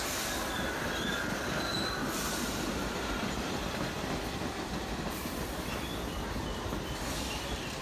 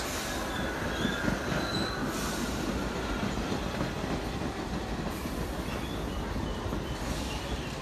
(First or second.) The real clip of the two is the second